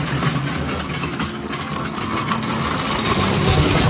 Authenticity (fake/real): real